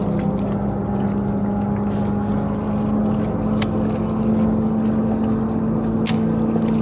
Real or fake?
real